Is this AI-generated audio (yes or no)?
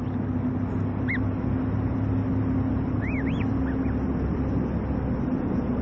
no